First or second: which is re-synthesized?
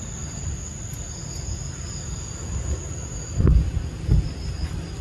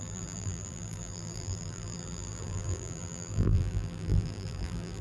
second